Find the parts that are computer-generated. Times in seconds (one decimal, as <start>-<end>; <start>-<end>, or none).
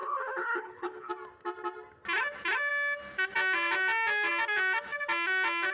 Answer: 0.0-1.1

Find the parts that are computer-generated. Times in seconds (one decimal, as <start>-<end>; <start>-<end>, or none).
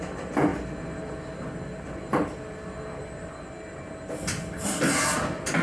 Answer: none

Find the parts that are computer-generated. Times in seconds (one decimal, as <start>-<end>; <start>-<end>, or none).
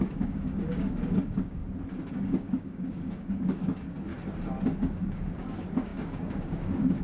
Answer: 0.0-1.6; 2.1-4.1; 4.8-7.0